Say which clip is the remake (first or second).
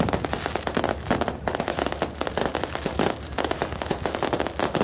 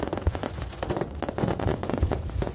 second